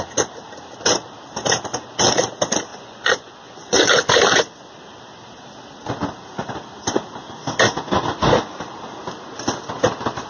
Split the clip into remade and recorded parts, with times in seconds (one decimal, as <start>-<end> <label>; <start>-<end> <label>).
0.0-2.7 recorded; 2.7-4.1 remade; 4.1-10.3 recorded